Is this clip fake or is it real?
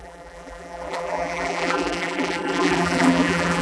fake